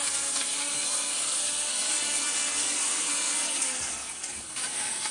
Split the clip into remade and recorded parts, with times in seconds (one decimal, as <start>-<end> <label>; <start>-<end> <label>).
0.0-5.1 remade

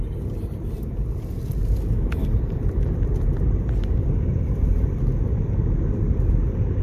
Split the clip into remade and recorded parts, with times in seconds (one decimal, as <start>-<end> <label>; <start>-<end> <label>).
0.0-6.8 recorded

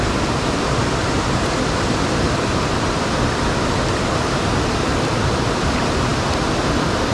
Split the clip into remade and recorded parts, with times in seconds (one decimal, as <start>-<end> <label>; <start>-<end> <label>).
0.0-6.1 remade; 6.1-6.6 recorded; 6.6-7.1 remade

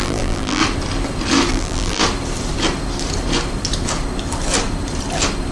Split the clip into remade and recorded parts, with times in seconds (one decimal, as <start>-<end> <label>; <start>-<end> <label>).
0.0-0.6 remade; 0.6-1.5 recorded; 1.5-2.0 remade; 2.0-5.5 recorded

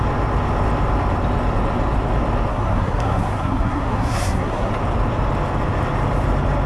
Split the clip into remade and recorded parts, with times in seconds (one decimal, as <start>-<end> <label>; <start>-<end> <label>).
0.0-2.5 recorded; 2.5-4.7 remade; 4.7-6.7 recorded

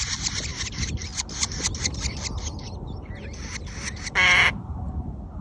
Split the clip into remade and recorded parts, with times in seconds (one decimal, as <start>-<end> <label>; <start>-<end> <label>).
0.0-5.4 recorded

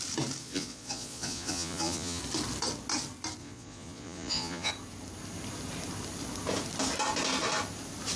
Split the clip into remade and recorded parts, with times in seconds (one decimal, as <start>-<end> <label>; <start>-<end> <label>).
0.0-0.4 recorded; 0.4-2.2 remade; 2.2-3.4 recorded; 3.4-4.7 remade; 4.7-8.2 recorded